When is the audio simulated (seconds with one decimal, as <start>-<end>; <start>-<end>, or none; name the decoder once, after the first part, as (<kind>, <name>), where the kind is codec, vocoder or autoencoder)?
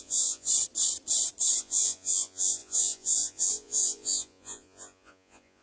0.0-0.5 (vocoder, Vocos); 1.6-5.6